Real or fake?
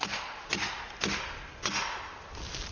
real